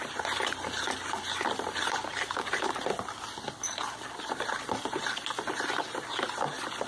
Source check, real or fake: fake